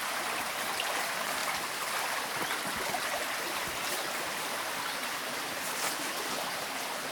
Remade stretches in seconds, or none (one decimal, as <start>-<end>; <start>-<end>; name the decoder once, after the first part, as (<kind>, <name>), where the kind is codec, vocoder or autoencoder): none